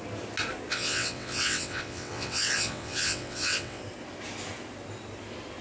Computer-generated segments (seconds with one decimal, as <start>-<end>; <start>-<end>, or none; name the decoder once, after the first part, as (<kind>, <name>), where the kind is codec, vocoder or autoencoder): 0.7-3.8 (vocoder, WaveNeXt)